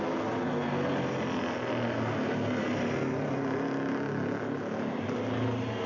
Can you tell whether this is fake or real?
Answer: real